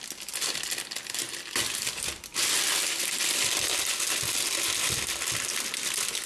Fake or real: real